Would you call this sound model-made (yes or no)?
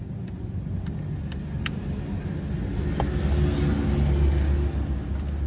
no